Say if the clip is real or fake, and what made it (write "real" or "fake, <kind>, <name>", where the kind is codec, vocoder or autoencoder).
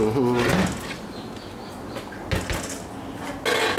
real